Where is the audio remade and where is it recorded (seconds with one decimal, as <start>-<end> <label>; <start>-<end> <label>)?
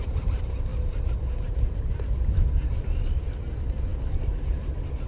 0.0-5.1 recorded